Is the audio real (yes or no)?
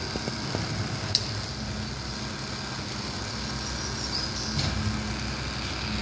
yes